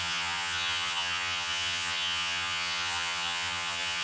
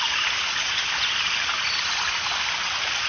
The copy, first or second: first